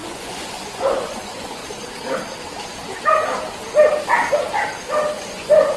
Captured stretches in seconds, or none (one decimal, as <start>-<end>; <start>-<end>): 1.6-5.1